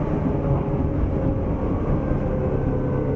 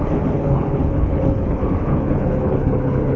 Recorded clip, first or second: first